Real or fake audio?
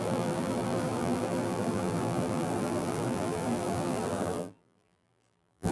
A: fake